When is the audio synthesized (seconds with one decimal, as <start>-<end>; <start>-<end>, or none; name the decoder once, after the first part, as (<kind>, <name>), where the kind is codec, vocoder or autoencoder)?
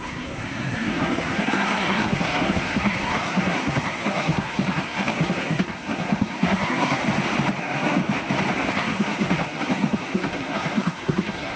0.0-7.0 (codec, SNAC); 7.6-8.0; 8.7-11.6